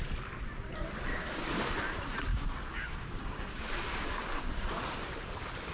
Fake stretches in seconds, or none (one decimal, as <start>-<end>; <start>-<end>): 1.1-1.8; 2.3-4.8